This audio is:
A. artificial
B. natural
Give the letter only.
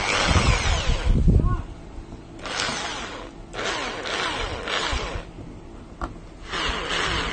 B